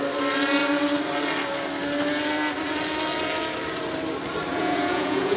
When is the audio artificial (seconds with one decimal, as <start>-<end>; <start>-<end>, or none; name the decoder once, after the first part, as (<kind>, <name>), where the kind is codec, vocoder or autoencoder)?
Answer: 4.5-5.4 (vocoder, Vocos)